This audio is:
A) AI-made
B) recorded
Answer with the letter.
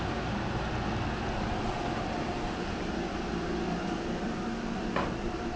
B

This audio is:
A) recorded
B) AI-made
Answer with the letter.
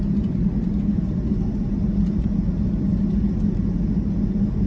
A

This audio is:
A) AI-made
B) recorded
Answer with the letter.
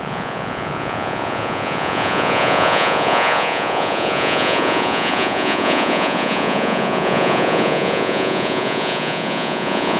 A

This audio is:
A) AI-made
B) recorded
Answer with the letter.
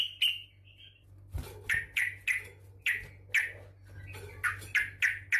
B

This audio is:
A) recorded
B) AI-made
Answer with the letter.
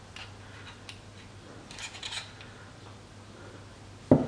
A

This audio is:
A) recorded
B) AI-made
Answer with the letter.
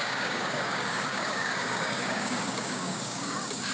B